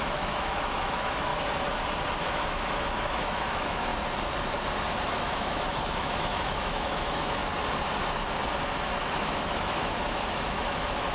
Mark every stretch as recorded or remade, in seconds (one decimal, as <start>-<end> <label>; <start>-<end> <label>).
0.0-1.3 remade; 1.3-2.2 recorded; 2.2-3.9 remade; 3.9-5.1 recorded; 5.1-7.4 remade; 7.4-9.1 recorded; 9.1-11.1 remade